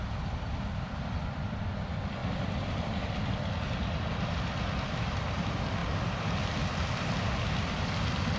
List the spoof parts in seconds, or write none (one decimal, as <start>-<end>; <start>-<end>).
none